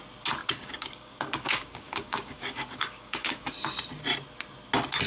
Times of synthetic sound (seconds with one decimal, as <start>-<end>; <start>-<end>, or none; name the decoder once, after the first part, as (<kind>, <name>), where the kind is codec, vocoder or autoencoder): 0.4-3.5 (codec, DAC)